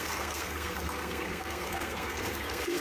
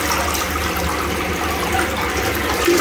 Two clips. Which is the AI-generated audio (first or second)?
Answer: first